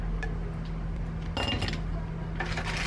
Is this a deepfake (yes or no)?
no